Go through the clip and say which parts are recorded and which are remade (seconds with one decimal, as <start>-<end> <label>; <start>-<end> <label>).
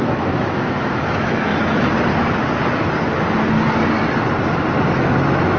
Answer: 0.0-1.5 remade; 1.5-4.9 recorded; 4.9-5.6 remade